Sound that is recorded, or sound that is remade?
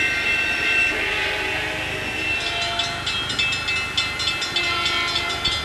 recorded